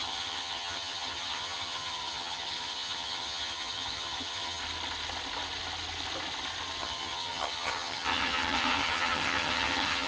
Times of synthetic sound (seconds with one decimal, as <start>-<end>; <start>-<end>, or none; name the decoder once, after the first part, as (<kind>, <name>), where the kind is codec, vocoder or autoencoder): 0.0-4.6 (vocoder, HiFi-GAN); 6.8-10.1